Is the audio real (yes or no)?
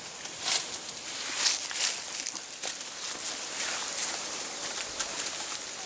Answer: yes